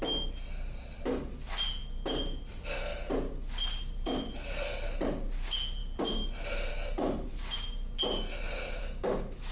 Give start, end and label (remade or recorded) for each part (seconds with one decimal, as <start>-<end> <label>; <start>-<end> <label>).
0.0-9.5 recorded